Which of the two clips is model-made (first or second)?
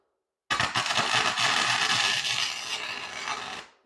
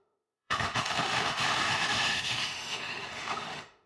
second